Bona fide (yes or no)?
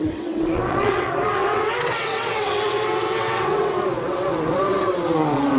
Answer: no